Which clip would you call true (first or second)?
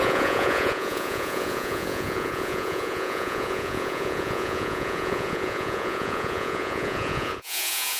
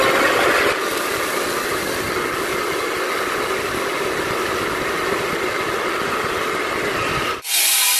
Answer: second